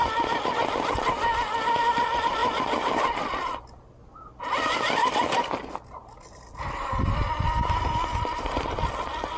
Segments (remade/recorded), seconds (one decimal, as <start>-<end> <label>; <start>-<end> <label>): 0.0-6.0 recorded; 6.0-7.0 remade; 7.0-9.4 recorded